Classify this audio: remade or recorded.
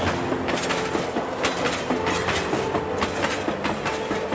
recorded